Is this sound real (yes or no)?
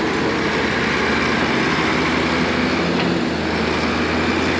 yes